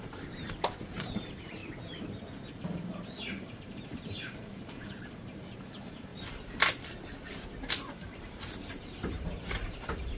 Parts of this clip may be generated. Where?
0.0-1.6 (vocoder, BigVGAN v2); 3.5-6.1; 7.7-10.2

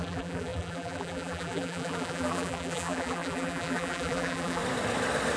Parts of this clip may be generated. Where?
0.0-4.6 (vocoder, BigVGAN v2)

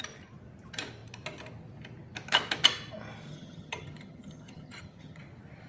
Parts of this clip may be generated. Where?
3.3-5.2 (vocoder, HiFi-GAN)